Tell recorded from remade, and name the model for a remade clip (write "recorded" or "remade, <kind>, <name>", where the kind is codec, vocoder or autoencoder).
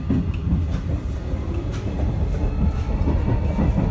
recorded